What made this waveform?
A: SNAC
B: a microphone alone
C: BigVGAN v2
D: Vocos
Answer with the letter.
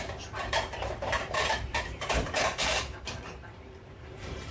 C